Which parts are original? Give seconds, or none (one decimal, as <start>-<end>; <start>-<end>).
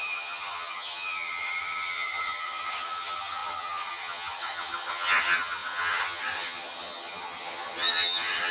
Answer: none